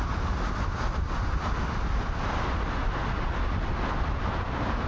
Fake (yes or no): no